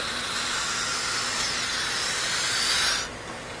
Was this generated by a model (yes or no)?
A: no